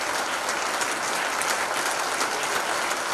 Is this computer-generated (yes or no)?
no